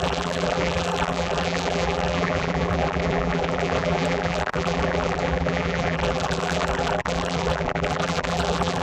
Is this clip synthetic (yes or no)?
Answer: yes